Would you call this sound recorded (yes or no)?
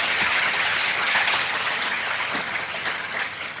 no